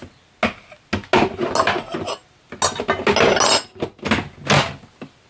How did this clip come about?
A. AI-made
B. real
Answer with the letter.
B